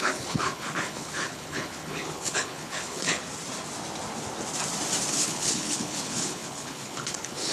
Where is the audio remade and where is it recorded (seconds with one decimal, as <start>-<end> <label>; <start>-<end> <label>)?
0.0-3.2 remade; 3.2-5.1 recorded; 5.1-7.5 remade